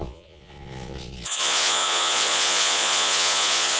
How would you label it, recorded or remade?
remade